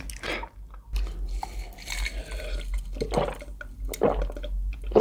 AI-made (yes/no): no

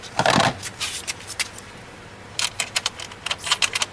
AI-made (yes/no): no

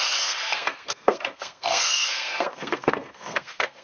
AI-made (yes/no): yes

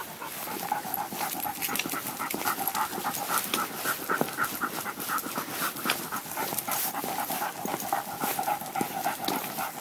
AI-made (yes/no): no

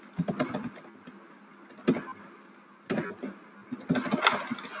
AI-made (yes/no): no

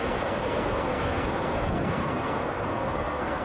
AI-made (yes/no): yes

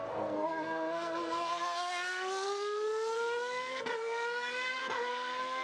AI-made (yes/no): yes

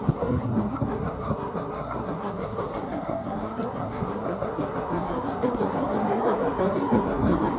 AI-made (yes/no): yes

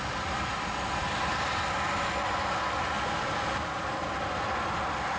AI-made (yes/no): no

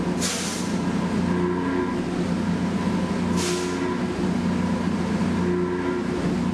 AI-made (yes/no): no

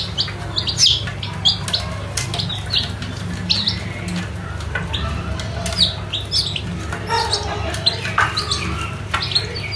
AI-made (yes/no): no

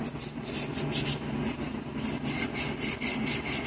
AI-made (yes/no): no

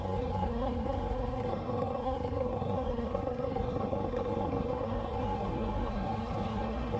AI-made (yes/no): yes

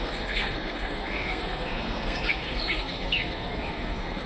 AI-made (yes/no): yes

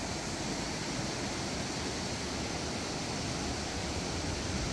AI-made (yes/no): no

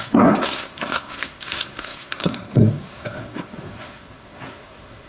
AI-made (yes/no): yes